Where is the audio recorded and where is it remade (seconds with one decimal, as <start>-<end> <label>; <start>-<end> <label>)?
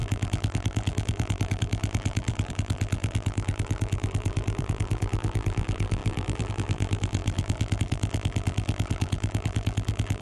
0.0-10.2 remade